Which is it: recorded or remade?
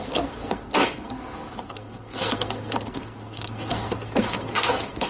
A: remade